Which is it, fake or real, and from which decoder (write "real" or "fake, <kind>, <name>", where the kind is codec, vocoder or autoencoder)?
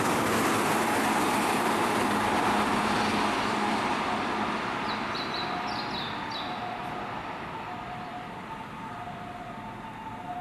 real